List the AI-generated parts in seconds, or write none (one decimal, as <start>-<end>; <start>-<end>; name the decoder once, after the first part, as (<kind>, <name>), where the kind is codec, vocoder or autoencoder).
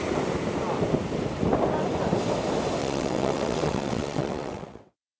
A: 2.8-5.2 (vocoder, WaveNeXt)